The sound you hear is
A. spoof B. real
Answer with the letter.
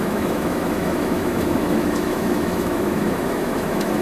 A